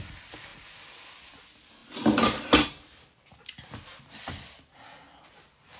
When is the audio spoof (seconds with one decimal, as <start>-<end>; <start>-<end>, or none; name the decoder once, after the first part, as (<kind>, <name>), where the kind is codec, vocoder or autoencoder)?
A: none